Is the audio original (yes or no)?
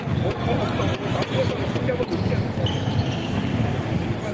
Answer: yes